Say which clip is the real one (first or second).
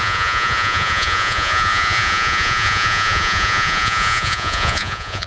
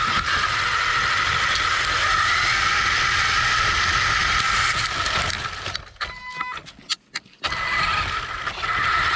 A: second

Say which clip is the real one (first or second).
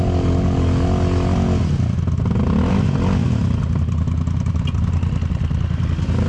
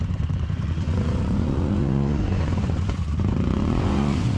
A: first